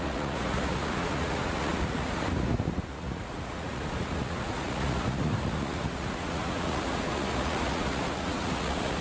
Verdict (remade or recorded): remade